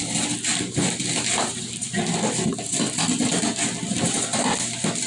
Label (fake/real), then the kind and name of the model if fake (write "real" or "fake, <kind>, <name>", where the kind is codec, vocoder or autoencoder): fake, vocoder, BigVGAN v2